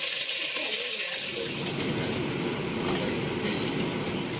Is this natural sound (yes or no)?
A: yes